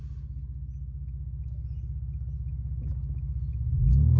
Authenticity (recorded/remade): recorded